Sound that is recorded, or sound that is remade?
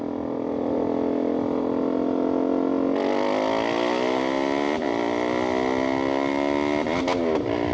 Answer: recorded